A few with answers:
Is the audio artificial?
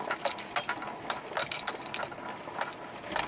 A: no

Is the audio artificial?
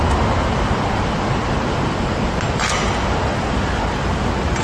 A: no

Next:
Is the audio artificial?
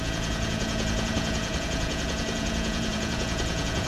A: yes